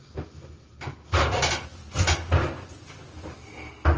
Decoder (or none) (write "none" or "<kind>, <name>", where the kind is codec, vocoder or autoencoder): none